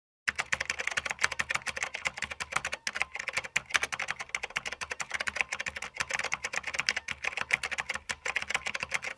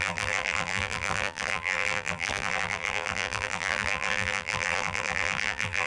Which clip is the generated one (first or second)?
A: second